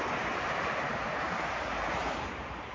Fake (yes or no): yes